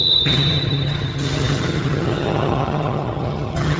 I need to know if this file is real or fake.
fake